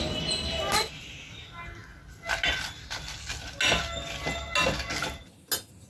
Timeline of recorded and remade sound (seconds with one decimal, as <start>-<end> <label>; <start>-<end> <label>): 0.0-5.9 recorded